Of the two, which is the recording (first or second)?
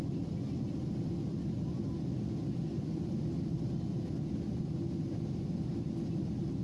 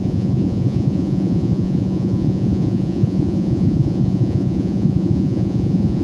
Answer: first